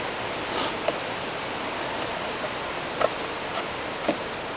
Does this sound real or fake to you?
real